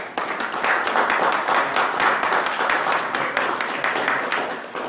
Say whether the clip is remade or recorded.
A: recorded